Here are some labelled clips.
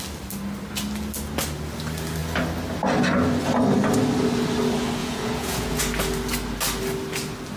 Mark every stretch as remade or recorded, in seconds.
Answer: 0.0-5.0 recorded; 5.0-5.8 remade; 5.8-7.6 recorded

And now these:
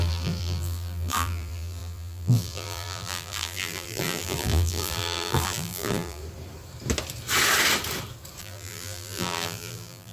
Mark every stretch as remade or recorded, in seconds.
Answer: 0.0-6.2 remade; 6.2-8.4 recorded; 8.4-10.1 remade

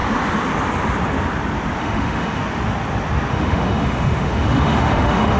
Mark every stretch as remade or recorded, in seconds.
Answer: 0.0-1.8 recorded; 1.8-2.4 remade; 2.4-3.3 recorded; 3.3-5.4 remade

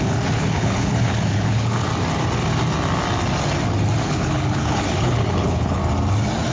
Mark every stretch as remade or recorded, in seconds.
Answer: 0.0-1.9 remade; 1.9-4.0 recorded; 4.0-5.8 remade; 5.8-6.5 recorded

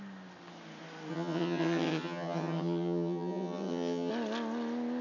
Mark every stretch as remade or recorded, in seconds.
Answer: 0.0-1.1 recorded; 1.1-4.1 remade; 4.1-5.0 recorded